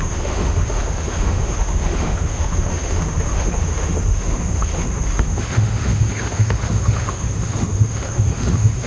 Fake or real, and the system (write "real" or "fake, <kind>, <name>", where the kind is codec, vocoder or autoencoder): fake, autoencoder, DAC-VAE